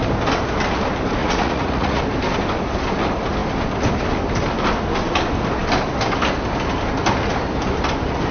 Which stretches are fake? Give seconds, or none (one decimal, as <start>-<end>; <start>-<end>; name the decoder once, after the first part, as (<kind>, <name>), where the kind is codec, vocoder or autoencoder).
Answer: 1.2-2.0 (vocoder, Vocos)